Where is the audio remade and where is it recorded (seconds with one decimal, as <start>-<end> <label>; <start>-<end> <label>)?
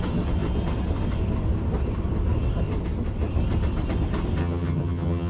0.0-4.4 recorded; 4.4-5.3 remade